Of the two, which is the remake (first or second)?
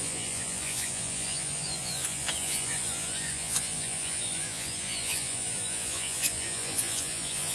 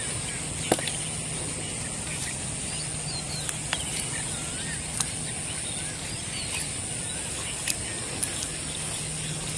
first